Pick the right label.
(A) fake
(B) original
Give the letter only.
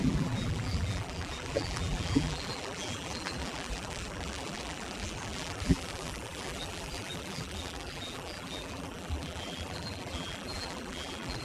A